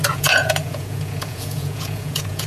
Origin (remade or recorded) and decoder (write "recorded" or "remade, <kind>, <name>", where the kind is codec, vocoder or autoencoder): remade, vocoder, Vocos